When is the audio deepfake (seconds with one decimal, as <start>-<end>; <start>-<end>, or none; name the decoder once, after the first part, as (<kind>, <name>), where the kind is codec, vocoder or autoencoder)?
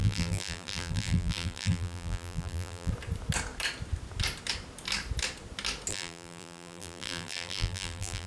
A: 0.0-2.9 (vocoder, BigVGAN v2); 5.9-8.3